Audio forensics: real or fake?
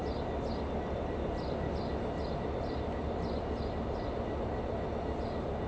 real